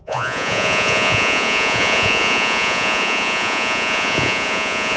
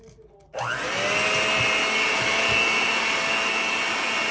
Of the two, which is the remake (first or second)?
first